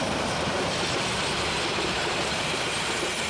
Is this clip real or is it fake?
real